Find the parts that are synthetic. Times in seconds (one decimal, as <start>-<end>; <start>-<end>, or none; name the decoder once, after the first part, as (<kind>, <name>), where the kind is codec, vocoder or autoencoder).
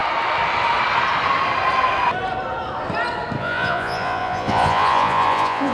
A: 3.4-5.7 (vocoder, Vocos)